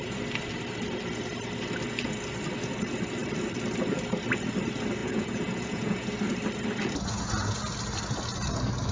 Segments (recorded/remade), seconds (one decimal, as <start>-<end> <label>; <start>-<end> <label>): 0.0-5.0 recorded; 5.0-6.1 remade; 6.1-8.9 recorded